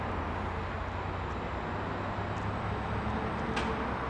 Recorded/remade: recorded